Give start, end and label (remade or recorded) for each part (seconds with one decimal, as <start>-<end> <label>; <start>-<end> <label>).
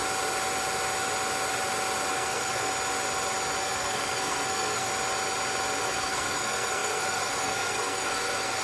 0.0-2.1 recorded; 2.1-2.7 remade; 2.7-3.6 recorded; 3.6-4.9 remade; 4.9-5.8 recorded; 5.8-8.6 remade